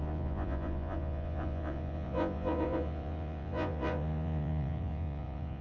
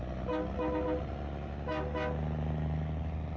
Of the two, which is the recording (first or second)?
second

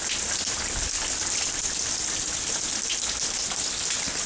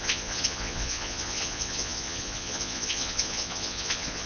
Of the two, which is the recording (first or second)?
first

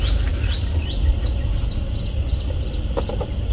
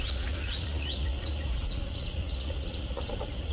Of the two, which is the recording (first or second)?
first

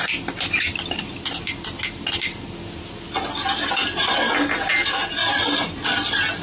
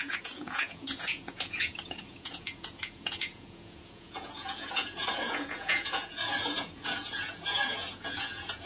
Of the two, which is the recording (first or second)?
first